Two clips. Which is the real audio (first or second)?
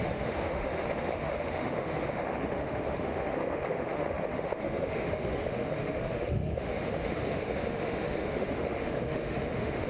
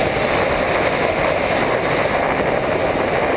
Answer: second